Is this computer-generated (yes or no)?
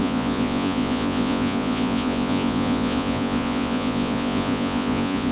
yes